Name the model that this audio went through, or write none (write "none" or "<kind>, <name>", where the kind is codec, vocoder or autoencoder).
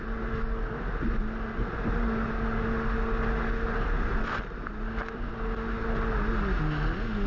none